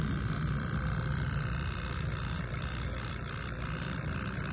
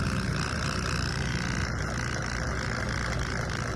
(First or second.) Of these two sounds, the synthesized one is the first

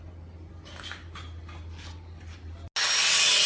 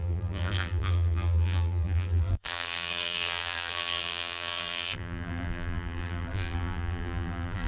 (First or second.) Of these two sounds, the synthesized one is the second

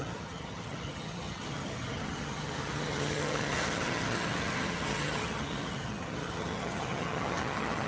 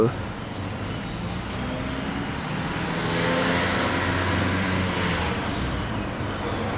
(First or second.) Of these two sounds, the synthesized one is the first